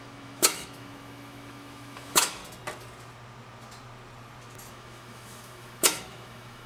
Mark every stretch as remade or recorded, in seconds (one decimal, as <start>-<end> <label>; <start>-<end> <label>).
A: 0.0-2.4 remade; 2.4-4.7 recorded; 4.7-6.7 remade